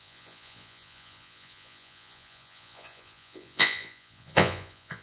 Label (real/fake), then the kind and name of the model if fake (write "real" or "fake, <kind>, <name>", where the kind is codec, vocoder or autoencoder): fake, vocoder, Vocos